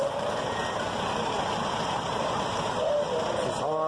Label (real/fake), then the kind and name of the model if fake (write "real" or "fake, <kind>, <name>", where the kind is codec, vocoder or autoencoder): real